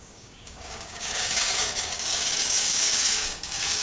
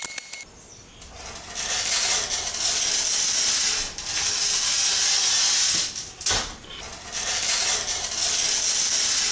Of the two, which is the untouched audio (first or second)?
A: second